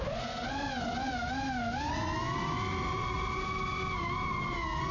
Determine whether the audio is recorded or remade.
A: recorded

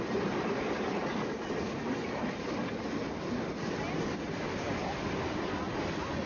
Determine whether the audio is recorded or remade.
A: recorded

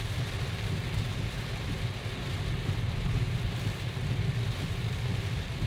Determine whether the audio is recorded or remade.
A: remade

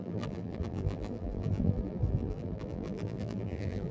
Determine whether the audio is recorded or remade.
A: remade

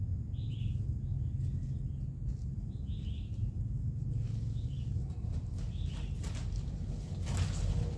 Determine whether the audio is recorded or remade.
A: recorded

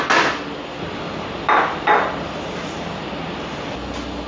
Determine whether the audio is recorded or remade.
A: recorded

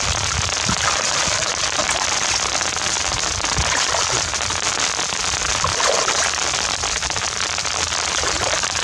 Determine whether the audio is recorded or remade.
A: recorded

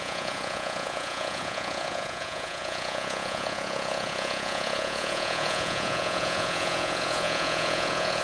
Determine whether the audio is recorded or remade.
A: remade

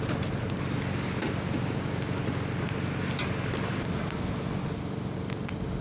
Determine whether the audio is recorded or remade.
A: recorded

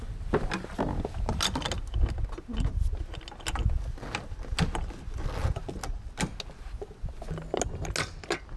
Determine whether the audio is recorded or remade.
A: recorded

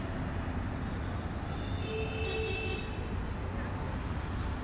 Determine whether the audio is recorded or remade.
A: recorded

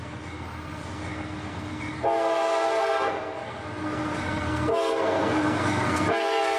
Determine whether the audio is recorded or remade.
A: remade